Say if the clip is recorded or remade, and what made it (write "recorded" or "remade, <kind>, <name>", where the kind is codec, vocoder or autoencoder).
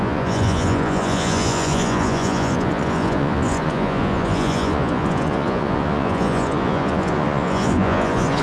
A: remade, vocoder, Vocos